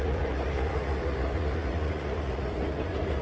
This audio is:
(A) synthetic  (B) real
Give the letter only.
A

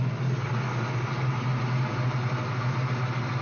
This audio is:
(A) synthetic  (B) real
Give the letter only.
B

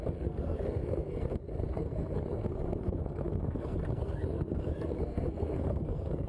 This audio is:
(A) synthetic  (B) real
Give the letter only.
A